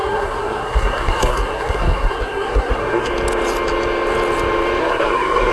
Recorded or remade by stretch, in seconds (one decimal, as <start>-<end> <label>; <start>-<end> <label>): 0.0-3.1 remade; 3.1-4.8 recorded; 4.8-5.5 remade